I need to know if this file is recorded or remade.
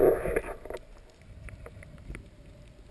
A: recorded